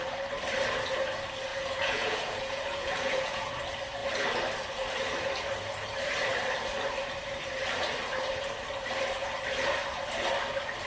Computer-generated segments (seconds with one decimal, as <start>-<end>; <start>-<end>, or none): 1.5-3.5